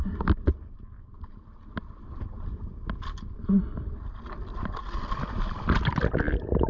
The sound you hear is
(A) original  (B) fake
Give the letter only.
A